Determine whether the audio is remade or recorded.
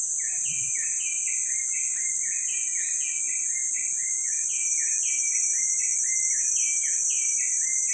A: recorded